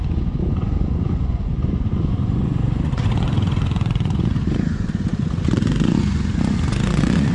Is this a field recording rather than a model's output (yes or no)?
no